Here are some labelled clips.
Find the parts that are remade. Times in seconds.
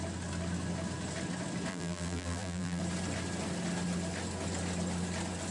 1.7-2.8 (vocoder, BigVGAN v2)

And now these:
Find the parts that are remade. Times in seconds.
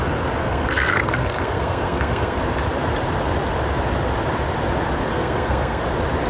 0.4-2.4 (codec, SNAC); 5.1-5.8